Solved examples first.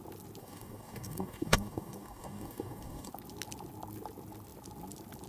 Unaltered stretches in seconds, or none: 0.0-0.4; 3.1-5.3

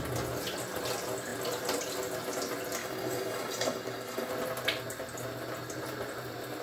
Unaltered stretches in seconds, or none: 0.0-2.8; 4.3-6.6

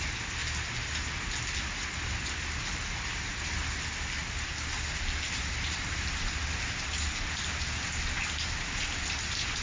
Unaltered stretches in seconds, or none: 0.0-9.6